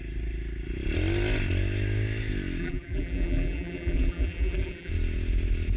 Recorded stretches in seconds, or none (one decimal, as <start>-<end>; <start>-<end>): 0.0-2.6; 4.9-5.8